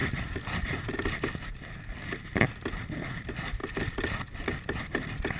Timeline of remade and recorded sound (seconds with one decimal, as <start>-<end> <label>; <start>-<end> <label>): 0.0-5.4 recorded